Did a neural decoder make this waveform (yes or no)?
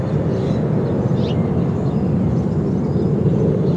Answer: no